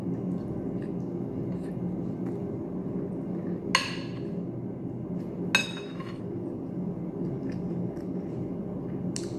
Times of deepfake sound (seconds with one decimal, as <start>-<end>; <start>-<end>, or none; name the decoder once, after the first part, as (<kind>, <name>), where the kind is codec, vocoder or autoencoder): 5.6-6.2 (autoencoder, DAC-VAE)

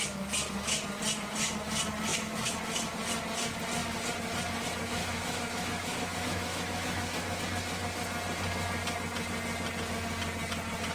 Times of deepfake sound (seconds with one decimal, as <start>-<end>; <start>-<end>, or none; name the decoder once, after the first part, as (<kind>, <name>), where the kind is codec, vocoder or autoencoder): 2.1-2.6 (autoencoder, DAC-VAE); 5.0-7.4

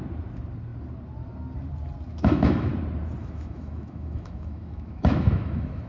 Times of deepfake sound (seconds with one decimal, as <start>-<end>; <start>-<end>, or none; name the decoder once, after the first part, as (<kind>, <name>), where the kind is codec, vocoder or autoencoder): 2.1-2.7 (autoencoder, DAC-VAE); 3.2-5.9

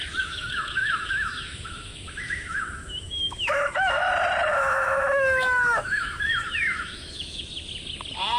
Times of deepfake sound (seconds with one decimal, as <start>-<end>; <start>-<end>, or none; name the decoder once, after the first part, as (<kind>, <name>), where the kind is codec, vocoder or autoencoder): 0.0-4.1 (autoencoder, DAC-VAE); 4.5-7.4

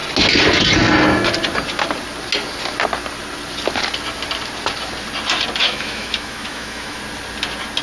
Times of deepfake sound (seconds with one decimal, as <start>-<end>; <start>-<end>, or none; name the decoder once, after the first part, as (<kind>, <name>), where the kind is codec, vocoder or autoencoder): 5.6-7.0 (autoencoder, DAC-VAE)

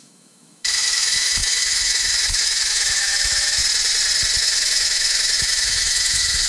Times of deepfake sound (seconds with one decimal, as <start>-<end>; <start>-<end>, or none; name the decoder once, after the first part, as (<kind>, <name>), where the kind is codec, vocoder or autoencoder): 0.0-3.6 (autoencoder, DAC-VAE); 4.4-6.5

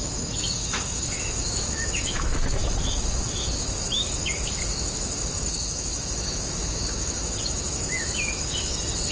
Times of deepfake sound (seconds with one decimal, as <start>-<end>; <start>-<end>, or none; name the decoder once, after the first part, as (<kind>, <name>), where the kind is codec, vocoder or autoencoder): 0.0-9.1 (autoencoder, DAC-VAE)